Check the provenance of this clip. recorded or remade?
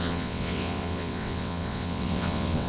remade